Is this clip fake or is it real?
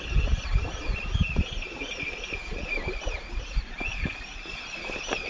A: real